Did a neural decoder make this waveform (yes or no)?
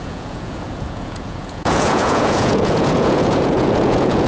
yes